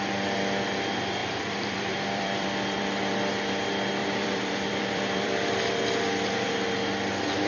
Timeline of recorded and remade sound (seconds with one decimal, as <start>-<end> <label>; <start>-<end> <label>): 0.0-1.2 recorded; 1.2-3.3 remade; 3.3-4.0 recorded; 4.0-5.6 remade; 5.6-7.5 recorded